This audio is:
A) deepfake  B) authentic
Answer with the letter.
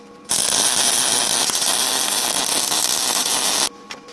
B